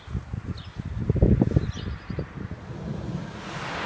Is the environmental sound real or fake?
real